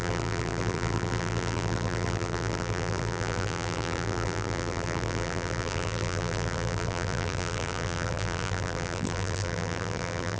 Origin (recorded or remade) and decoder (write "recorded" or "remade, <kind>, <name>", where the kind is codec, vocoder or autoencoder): remade, vocoder, BigVGAN v2